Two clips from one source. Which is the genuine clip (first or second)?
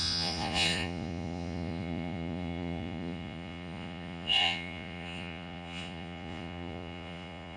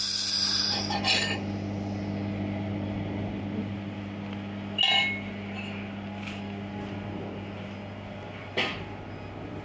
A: second